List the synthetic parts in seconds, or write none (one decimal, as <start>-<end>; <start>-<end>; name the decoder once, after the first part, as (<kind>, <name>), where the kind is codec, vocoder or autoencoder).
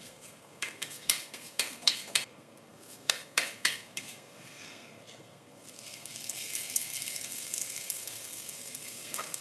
0.0-9.4 (codec, SNAC)